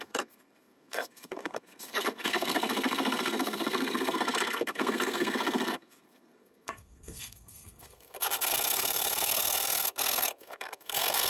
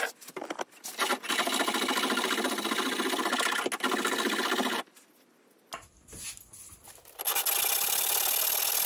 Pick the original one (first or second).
second